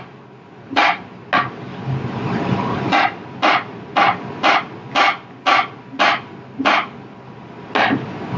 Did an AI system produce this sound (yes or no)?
no